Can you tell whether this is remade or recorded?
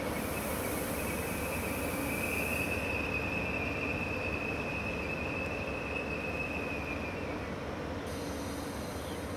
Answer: recorded